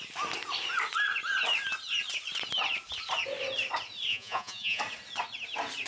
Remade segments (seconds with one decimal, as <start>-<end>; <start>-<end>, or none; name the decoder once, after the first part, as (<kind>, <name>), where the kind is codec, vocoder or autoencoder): 4.1-4.8 (vocoder, Vocos)